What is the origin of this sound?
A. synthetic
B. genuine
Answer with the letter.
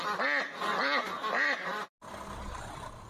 B